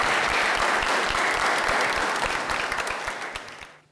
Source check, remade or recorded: recorded